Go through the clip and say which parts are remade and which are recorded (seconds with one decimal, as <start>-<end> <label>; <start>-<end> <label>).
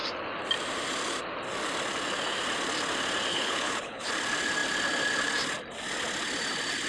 0.0-3.3 recorded; 3.3-4.1 remade; 4.1-6.9 recorded